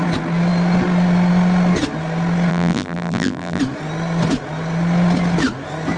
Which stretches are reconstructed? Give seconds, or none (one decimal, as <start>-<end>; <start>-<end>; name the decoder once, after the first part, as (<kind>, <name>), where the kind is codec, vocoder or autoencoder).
2.5-3.6 (vocoder, BigVGAN v2)